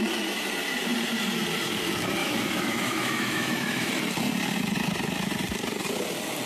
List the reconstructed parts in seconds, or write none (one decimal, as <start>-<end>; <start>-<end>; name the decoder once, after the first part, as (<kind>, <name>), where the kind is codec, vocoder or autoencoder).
2.2-3.9 (autoencoder, DAC-VAE)